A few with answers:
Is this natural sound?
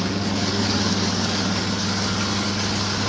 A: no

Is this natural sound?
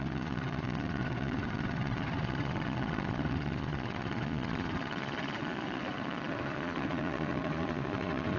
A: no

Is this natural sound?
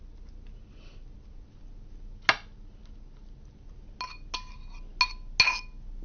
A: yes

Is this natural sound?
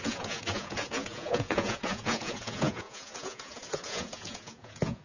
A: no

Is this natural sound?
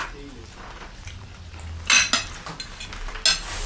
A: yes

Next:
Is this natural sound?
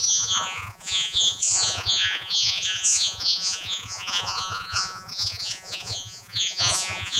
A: no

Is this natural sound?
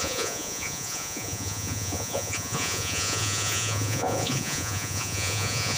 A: no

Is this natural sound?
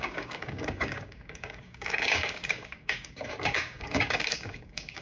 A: no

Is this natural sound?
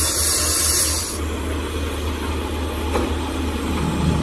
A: yes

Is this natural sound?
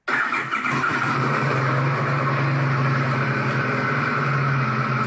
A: yes